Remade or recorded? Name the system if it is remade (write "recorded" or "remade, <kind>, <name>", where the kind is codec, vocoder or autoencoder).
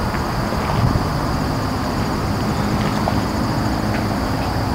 recorded